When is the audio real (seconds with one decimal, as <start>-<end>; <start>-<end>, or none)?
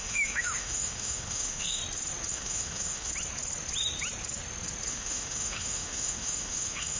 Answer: 1.8-2.3; 3.1-4.9